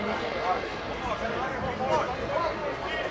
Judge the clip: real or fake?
real